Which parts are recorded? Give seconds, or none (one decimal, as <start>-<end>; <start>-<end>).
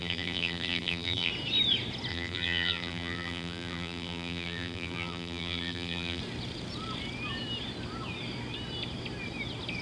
1.3-2.1; 6.2-9.8